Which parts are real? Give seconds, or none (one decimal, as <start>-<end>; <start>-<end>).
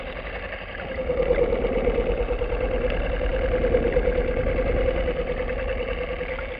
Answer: 0.0-6.6